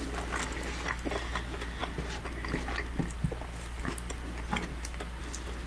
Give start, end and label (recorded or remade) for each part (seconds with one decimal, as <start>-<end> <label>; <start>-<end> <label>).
0.0-5.7 recorded